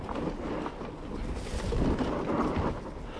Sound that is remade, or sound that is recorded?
recorded